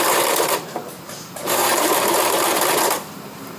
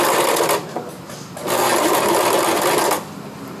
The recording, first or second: second